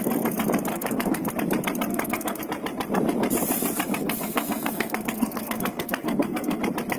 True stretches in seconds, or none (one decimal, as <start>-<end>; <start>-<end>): 0.0-0.7; 1.3-1.9; 2.4-4.0; 6.6-7.0